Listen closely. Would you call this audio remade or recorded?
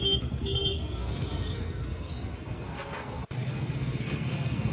remade